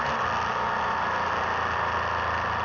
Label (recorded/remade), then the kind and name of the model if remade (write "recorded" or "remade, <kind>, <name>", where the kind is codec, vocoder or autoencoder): recorded